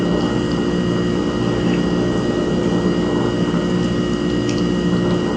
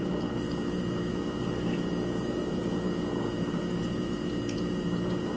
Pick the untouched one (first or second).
first